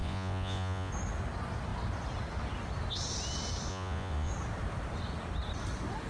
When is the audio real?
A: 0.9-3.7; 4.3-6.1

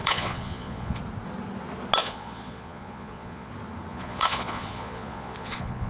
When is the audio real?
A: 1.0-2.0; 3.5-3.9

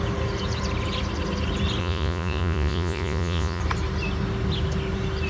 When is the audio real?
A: 0.0-1.8; 3.6-5.3